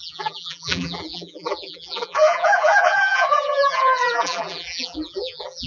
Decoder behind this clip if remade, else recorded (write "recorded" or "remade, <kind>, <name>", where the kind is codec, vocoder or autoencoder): remade, vocoder, BigVGAN v2